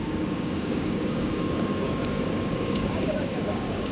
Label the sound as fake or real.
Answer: fake